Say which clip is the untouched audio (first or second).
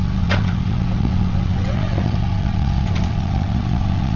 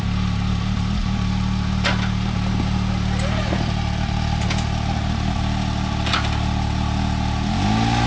second